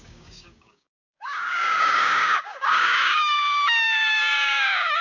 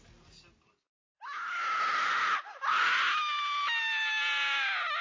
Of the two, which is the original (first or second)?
second